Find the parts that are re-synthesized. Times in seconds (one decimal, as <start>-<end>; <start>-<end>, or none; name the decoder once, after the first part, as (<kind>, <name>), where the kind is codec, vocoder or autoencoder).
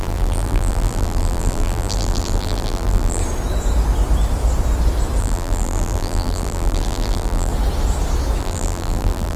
0.0-3.2 (vocoder, BigVGAN v2); 5.2-7.5; 8.4-9.4